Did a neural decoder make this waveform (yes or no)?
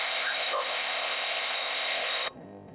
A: yes